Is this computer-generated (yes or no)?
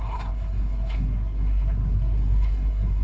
yes